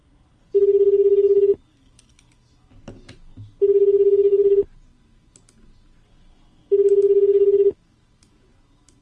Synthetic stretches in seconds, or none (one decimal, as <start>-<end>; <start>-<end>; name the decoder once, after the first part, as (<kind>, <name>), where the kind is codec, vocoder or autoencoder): 4.3-5.0 (vocoder, BigVGAN v2)